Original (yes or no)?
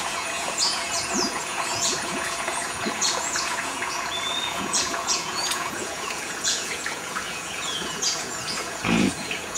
no